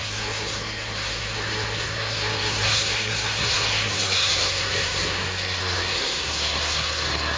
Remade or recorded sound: remade